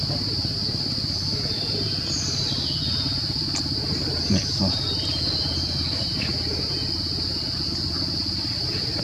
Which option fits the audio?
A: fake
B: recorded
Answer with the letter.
B